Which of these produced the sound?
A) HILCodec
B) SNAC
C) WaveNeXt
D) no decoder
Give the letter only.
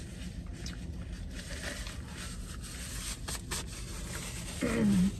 D